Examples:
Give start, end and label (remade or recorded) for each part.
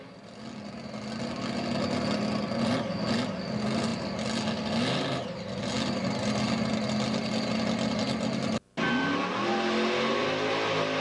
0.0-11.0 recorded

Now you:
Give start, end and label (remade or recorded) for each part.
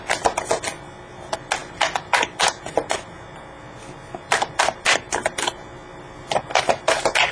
0.0-7.3 recorded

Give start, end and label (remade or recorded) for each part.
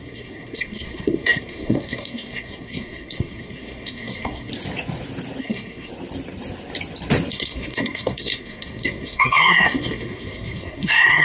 0.0-4.5 remade; 4.5-5.4 recorded; 5.4-5.9 remade; 5.9-7.3 recorded; 7.3-11.2 remade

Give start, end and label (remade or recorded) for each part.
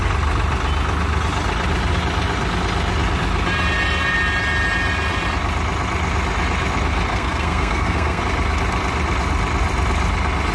0.0-7.1 recorded; 7.1-8.2 remade; 8.2-10.5 recorded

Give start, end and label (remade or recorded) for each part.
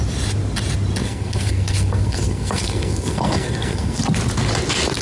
0.0-1.0 recorded; 1.0-4.0 remade; 4.0-5.0 recorded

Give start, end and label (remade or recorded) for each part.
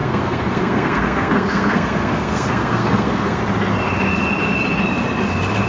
0.0-3.4 remade; 3.4-5.7 recorded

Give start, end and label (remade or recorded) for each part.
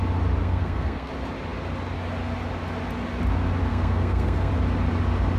0.0-0.4 recorded; 0.4-1.1 remade; 1.1-3.7 recorded; 3.7-4.5 remade; 4.5-5.4 recorded